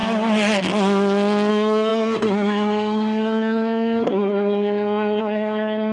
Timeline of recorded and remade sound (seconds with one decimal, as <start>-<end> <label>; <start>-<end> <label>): 0.0-1.5 recorded; 1.5-5.9 remade